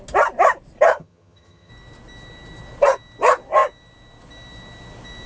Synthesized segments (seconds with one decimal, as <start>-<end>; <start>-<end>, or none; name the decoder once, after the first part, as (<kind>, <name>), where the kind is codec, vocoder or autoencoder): 0.9-1.7 (vocoder, HiFi-GAN)